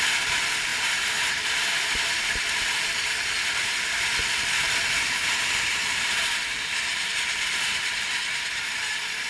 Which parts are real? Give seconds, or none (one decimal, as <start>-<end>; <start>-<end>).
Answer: 0.0-9.3

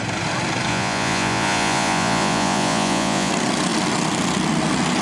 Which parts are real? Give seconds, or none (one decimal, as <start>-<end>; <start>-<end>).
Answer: 0.0-0.7; 3.3-5.0